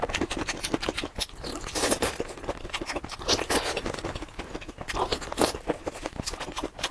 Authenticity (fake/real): real